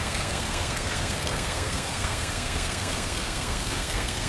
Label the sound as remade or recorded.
remade